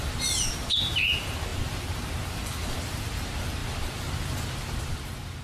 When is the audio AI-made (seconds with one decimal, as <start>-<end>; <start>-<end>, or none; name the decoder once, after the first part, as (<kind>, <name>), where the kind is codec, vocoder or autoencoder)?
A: none

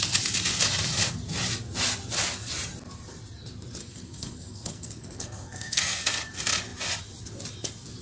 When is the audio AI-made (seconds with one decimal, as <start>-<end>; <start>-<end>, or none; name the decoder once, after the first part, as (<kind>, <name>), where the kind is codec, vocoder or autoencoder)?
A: 3.8-6.2 (codec, SNAC)

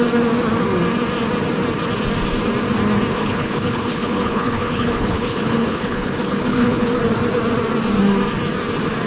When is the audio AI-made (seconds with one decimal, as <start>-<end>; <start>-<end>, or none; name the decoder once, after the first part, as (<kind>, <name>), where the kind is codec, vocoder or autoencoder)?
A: 3.1-6.9 (codec, HILCodec)

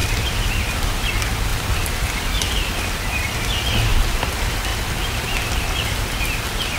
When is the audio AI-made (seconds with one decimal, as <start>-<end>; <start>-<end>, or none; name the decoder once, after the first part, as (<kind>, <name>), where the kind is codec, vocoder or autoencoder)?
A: 0.0-0.7 (vocoder, BigVGAN v2); 1.5-3.5; 4.7-6.2

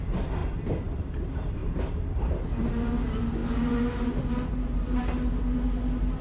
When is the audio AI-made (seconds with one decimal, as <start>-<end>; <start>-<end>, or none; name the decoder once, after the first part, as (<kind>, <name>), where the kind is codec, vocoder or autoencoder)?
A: 1.6-2.6 (vocoder, BigVGAN v2)